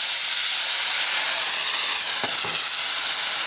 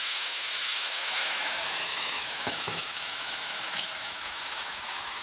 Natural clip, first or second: first